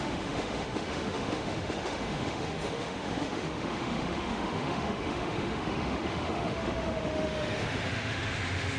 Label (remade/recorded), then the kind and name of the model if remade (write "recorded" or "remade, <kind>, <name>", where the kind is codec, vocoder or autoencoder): remade, autoencoder, DAC-VAE